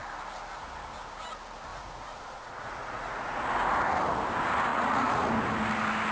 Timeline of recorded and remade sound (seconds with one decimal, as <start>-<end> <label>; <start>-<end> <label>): 0.0-1.7 recorded; 1.7-3.4 remade; 3.4-4.7 recorded; 4.7-5.3 remade; 5.3-6.1 recorded